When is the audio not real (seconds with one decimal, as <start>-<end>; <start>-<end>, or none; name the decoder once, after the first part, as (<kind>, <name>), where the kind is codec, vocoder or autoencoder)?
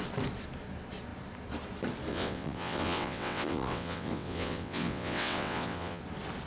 2.1-6.0 (vocoder, WaveNeXt)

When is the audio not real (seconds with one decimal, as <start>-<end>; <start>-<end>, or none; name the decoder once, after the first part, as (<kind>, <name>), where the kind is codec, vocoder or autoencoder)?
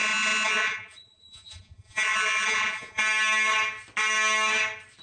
0.0-3.0 (vocoder, Vocos)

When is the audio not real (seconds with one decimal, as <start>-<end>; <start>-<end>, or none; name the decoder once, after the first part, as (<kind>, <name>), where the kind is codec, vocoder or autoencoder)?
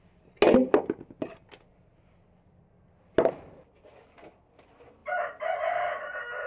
none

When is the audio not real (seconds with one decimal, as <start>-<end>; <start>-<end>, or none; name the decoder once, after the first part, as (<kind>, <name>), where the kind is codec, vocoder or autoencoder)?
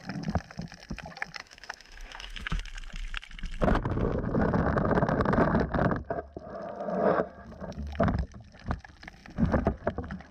1.4-2.6 (autoencoder, DAC-VAE)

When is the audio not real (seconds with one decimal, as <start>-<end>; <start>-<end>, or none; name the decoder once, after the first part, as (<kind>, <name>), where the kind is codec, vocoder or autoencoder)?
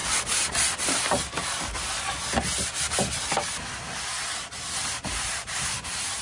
4.8-6.2 (vocoder, BigVGAN v2)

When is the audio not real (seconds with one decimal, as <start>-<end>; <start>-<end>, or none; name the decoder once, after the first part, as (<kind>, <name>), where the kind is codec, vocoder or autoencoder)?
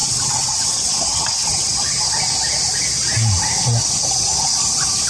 0.0-1.7 (vocoder, WaveNeXt)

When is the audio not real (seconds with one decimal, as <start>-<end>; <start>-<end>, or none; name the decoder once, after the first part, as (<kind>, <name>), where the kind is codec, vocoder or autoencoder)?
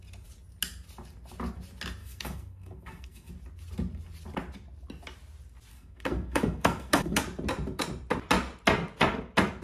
2.0-3.3 (codec, SNAC); 5.7-7.2